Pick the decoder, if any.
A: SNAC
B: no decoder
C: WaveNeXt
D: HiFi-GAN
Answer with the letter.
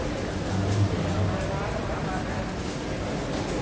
B